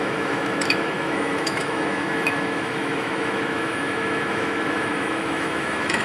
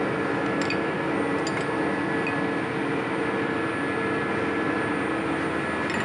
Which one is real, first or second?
second